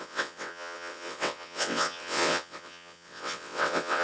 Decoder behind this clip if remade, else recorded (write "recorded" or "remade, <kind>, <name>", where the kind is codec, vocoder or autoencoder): remade, vocoder, WaveNeXt